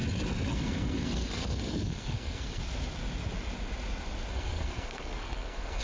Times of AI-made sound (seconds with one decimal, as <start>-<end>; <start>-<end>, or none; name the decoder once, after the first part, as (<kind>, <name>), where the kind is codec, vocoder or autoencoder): 0.5-2.6 (codec, SNAC); 4.3-5.8